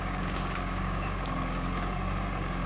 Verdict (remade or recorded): remade